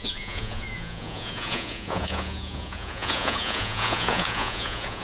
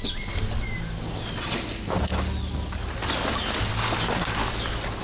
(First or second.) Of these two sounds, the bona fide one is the second